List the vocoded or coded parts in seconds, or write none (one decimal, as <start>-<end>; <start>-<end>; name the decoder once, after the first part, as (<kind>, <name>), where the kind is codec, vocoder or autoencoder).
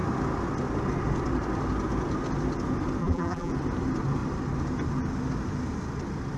3.0-3.5 (vocoder, BigVGAN v2)